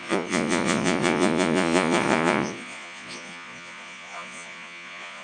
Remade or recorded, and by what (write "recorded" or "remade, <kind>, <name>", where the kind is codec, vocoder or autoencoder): remade, vocoder, Vocos